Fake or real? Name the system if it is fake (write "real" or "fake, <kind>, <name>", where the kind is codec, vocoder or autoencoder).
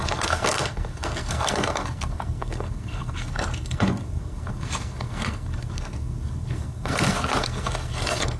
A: fake, codec, SNAC